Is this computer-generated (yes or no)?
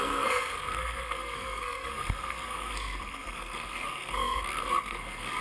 yes